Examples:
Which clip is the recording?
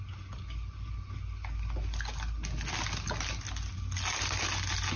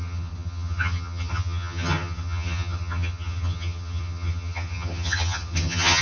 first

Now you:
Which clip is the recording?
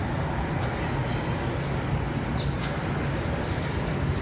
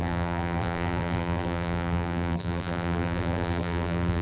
first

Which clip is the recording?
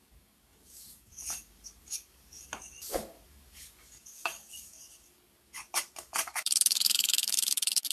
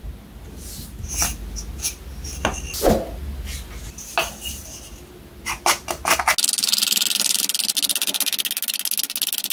second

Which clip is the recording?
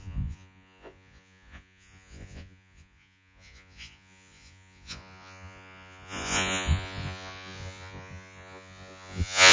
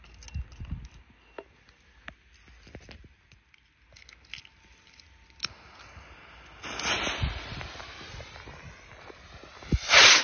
second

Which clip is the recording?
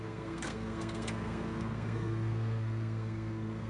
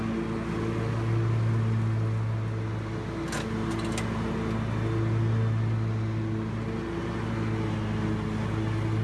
second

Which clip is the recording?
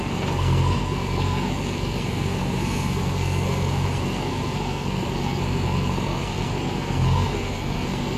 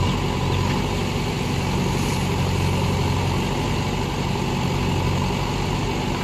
second